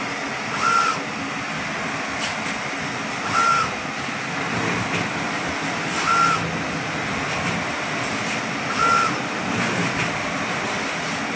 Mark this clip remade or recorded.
recorded